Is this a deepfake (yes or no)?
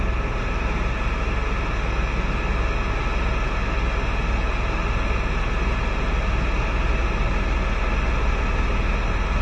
no